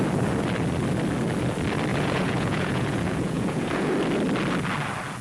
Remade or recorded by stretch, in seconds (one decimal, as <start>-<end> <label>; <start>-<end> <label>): 0.0-1.9 recorded; 1.9-3.9 remade; 3.9-5.2 recorded